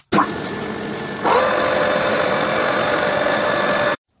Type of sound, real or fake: real